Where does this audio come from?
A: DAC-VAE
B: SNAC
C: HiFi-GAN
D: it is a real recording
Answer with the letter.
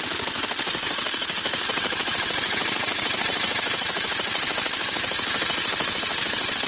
D